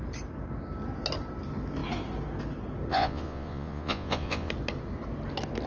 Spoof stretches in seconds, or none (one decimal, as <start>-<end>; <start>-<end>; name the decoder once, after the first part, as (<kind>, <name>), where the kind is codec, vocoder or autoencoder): 2.9-4.5 (vocoder, Vocos)